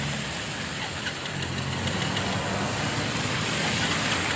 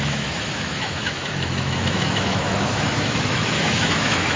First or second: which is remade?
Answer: second